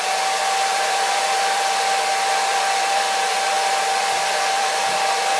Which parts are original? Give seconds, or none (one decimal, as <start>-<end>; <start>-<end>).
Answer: 0.0-0.7; 1.6-2.5; 4.8-5.4